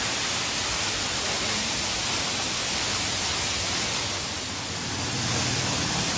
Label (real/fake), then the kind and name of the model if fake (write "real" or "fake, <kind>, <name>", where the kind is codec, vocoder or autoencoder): real